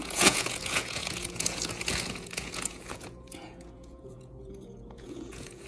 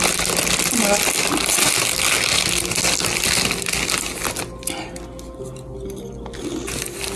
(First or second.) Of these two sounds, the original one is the second